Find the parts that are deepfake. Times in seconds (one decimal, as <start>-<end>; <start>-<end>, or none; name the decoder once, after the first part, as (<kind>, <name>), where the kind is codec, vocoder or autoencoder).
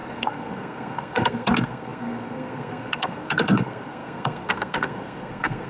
0.0-5.7 (codec, SNAC)